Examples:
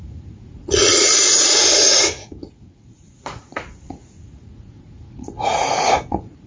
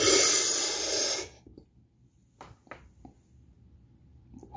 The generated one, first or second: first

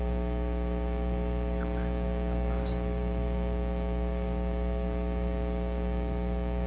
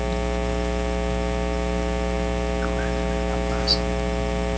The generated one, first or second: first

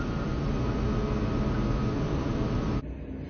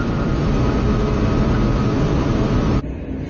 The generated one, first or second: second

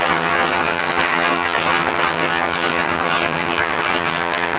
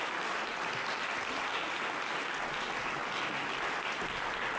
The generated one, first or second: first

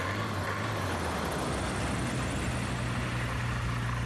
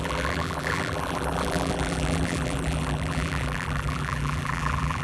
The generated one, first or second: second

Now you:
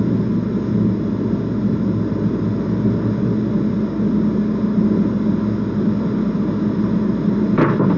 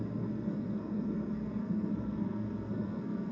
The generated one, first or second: second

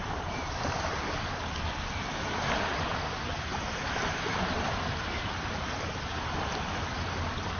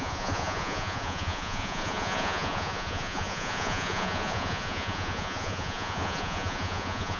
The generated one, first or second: second